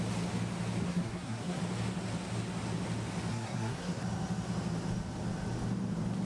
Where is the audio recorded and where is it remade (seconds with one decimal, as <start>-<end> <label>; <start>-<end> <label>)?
0.0-0.8 recorded; 0.8-1.6 remade; 1.6-3.3 recorded; 3.3-4.0 remade; 4.0-6.3 recorded